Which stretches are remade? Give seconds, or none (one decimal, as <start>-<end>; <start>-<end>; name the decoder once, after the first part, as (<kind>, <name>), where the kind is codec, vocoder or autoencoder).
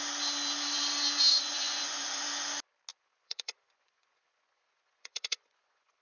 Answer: 1.3-2.2 (vocoder, Vocos); 2.9-6.0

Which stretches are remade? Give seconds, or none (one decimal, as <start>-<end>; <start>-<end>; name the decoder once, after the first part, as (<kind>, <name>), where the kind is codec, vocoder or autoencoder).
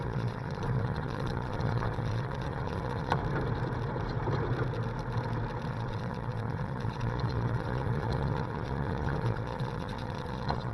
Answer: 0.0-3.2 (vocoder, Vocos); 5.7-10.7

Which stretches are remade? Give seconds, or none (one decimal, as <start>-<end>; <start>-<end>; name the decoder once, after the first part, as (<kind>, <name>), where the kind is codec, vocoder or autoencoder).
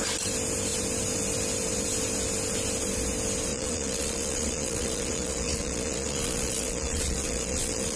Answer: 3.5-8.0 (vocoder, Vocos)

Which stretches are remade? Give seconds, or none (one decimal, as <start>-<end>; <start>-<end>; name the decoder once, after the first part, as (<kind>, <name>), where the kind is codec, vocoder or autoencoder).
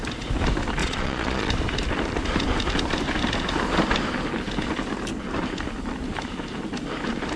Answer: 0.8-1.5 (vocoder, Vocos)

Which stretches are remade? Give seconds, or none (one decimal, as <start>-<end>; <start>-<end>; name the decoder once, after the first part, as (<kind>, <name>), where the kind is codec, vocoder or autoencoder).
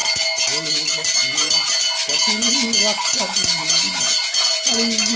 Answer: 3.6-4.7 (vocoder, Vocos)